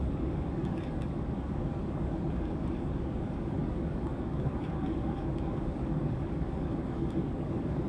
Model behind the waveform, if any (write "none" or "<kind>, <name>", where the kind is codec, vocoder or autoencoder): codec, DAC